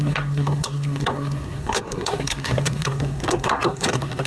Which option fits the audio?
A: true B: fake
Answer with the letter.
B